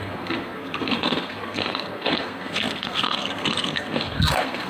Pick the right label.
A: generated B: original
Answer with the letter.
A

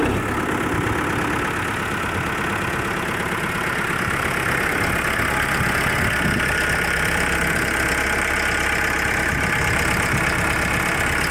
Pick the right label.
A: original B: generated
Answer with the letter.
A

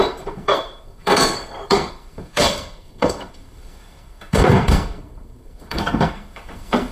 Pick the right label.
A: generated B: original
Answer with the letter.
A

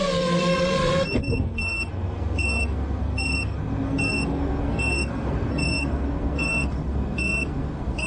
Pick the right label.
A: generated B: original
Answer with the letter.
A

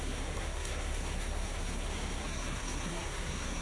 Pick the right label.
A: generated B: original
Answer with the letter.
A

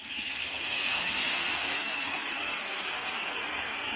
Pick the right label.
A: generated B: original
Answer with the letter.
A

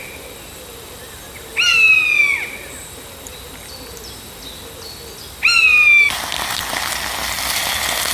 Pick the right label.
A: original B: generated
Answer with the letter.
A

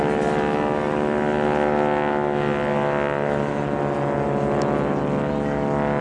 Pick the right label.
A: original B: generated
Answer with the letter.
A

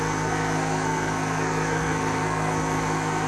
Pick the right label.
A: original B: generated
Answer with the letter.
B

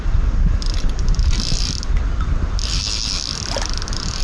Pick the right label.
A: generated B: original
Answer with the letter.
B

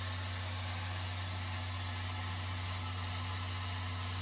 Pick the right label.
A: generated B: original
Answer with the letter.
B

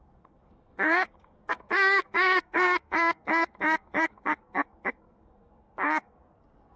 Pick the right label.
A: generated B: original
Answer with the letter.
A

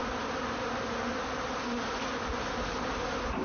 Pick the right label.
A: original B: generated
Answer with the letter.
A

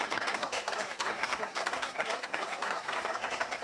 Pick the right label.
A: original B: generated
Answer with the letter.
B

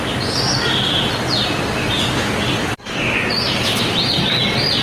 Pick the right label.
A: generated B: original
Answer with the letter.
B